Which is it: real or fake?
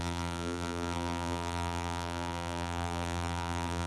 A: fake